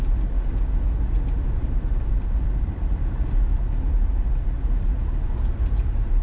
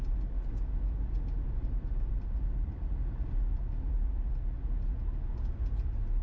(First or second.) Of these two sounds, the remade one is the first